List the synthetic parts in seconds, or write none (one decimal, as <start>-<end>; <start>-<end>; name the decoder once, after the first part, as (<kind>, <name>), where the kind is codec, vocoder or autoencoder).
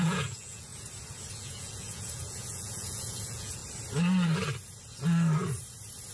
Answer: 0.0-0.7 (vocoder, Vocos); 1.3-3.6